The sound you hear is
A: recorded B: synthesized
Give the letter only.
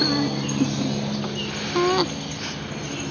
A